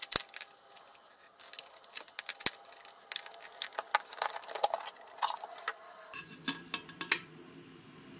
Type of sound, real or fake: real